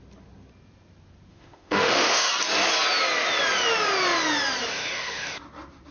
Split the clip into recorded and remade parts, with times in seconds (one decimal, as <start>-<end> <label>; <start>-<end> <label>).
0.0-1.3 recorded; 1.3-2.3 remade; 2.3-4.7 recorded; 4.7-5.4 remade; 5.4-5.9 recorded